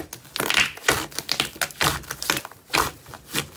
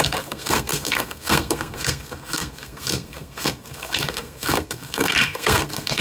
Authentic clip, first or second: first